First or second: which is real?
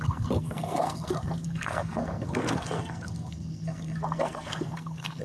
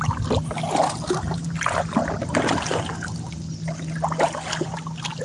second